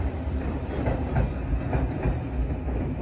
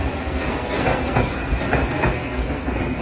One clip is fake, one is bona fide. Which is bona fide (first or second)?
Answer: first